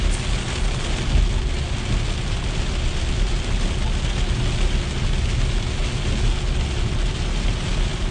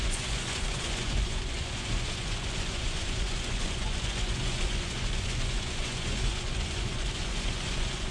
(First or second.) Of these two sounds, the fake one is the second